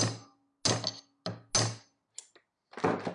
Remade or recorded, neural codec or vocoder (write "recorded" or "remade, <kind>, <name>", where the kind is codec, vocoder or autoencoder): recorded